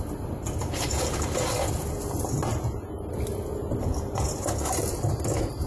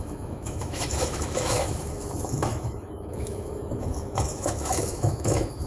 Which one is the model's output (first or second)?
second